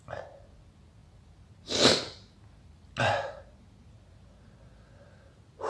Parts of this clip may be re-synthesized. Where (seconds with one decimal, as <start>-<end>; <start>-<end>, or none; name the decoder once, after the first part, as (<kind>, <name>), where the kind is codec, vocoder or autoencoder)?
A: none